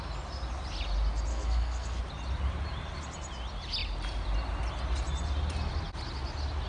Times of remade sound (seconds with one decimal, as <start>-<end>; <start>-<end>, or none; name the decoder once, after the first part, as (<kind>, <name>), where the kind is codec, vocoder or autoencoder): 1.3-2.0 (codec, SNAC)